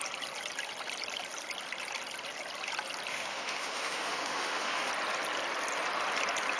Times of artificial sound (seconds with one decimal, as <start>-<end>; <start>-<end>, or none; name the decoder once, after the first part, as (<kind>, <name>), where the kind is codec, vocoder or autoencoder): 3.1-4.9 (autoencoder, DAC-VAE)